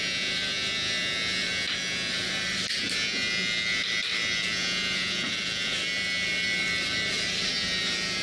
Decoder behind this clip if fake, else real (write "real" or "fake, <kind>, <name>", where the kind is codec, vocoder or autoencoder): real